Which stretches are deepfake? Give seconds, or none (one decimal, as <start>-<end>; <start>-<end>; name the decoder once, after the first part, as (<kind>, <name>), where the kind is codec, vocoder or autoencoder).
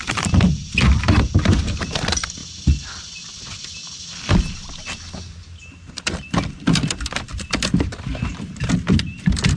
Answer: none